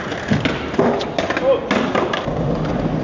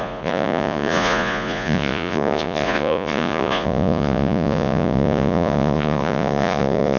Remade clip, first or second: second